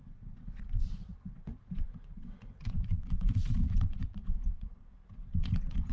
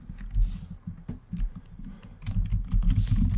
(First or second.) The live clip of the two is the second